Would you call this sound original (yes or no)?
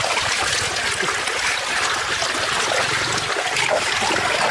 yes